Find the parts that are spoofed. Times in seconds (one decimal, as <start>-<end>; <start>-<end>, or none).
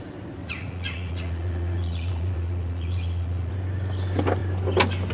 0.4-3.5